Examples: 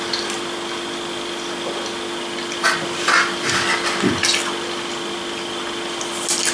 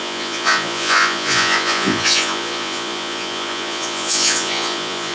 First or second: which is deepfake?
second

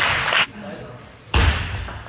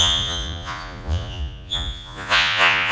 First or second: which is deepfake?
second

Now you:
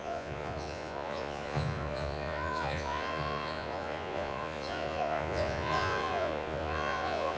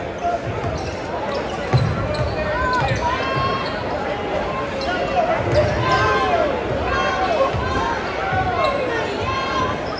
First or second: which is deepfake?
first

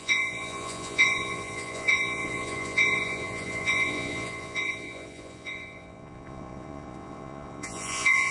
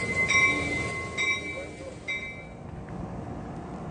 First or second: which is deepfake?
first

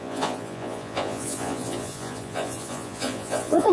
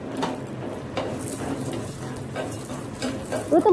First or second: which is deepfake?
first